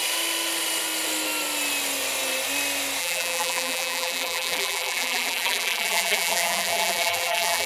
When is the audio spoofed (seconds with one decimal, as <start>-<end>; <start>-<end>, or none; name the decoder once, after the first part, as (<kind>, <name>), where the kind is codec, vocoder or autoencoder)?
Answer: 3.0-7.7 (vocoder, BigVGAN v2)